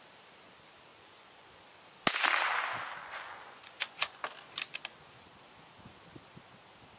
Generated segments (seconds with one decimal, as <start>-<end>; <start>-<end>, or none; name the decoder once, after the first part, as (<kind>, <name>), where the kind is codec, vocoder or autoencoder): 0.9-1.6 (vocoder, Vocos); 3.0-4.2